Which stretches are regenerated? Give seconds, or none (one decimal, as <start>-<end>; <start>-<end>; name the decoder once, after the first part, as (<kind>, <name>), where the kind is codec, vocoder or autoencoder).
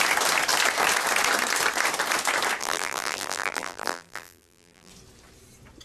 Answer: 2.6-4.9 (vocoder, BigVGAN v2)